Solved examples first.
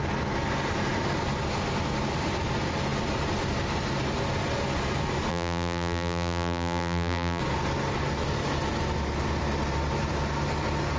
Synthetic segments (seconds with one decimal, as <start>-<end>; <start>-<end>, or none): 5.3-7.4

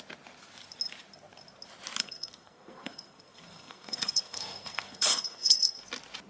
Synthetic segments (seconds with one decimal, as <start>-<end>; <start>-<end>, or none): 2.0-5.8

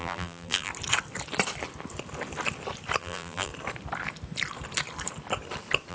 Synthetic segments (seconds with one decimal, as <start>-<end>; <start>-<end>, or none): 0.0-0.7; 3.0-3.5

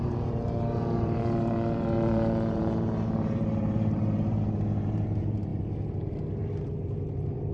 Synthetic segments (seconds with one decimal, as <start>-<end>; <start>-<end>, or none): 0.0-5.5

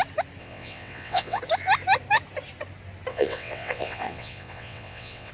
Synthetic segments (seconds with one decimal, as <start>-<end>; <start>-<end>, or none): 0.4-1.4; 3.1-5.3